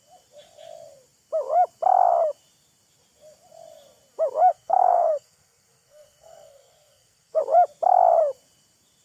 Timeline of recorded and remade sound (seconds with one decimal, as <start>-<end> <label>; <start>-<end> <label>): 0.0-4.5 recorded; 4.5-7.4 remade; 7.4-9.0 recorded